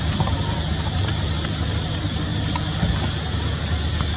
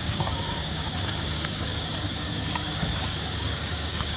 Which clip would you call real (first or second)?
first